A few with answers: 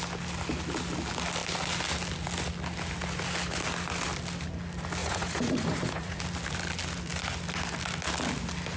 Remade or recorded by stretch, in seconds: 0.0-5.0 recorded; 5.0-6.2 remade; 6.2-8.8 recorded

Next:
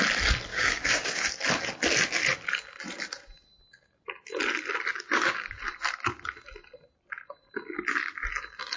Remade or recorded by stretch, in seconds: 0.0-0.5 recorded; 0.5-1.3 remade; 1.3-4.9 recorded; 4.9-5.6 remade; 5.6-8.8 recorded

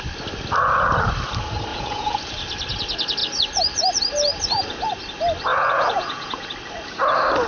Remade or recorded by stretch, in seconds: 0.0-1.7 recorded; 1.7-2.3 remade; 2.3-5.5 recorded; 5.5-6.5 remade; 6.5-7.5 recorded

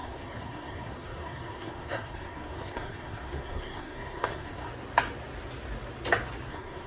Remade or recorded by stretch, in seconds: 0.0-4.7 remade; 4.7-6.5 recorded; 6.5-6.9 remade

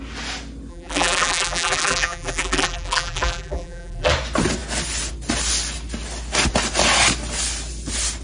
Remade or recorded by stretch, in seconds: 0.0-0.7 recorded; 0.7-4.1 remade; 4.1-8.2 recorded